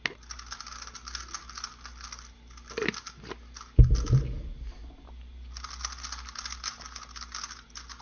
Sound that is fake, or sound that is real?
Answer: real